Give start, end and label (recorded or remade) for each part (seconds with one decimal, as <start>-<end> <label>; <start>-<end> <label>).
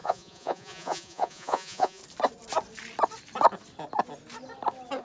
0.0-2.0 remade; 2.0-5.0 recorded